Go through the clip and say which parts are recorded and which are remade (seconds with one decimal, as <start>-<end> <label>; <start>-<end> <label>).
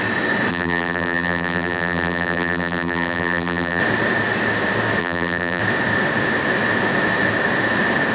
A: 0.0-0.5 recorded; 0.5-3.8 remade; 3.8-5.0 recorded; 5.0-5.6 remade; 5.6-8.1 recorded